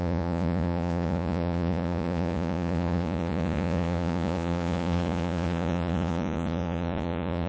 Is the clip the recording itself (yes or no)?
no